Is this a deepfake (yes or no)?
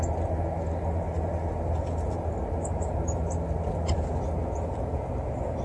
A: no